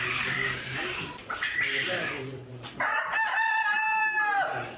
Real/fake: fake